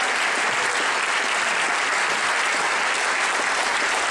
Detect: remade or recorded recorded